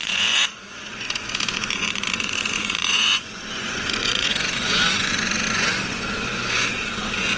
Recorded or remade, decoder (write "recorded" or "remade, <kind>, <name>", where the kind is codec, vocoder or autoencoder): remade, vocoder, Vocos